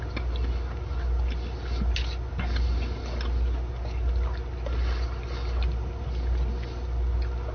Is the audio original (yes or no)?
yes